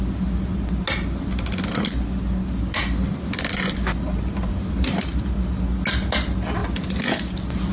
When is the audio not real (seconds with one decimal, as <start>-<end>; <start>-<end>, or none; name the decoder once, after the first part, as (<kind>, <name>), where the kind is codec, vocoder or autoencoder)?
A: none

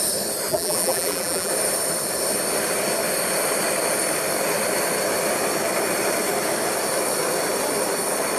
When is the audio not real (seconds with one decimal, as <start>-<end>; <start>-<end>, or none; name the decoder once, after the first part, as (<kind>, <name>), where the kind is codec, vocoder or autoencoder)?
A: 0.5-1.5 (vocoder, BigVGAN v2)

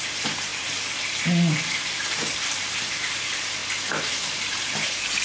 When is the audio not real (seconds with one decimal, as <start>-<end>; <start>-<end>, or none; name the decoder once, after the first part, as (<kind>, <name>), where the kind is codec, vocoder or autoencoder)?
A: 0.0-0.5 (vocoder, BigVGAN v2); 1.7-3.6; 4.1-5.2